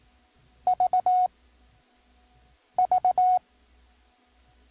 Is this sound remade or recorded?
recorded